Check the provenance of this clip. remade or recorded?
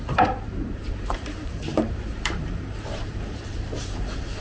remade